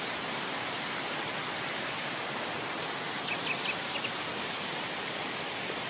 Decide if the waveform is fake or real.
fake